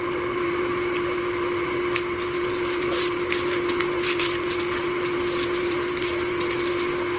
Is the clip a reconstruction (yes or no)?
no